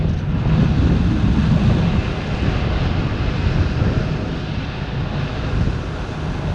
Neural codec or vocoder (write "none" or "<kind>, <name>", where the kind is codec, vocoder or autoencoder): none